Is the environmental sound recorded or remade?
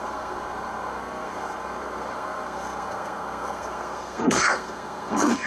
remade